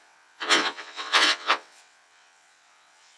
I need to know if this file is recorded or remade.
remade